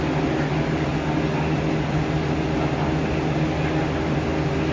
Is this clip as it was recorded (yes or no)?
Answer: yes